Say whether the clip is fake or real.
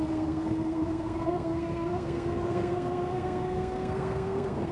fake